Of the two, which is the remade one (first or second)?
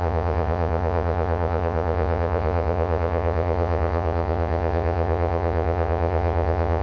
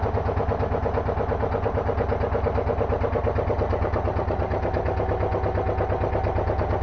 first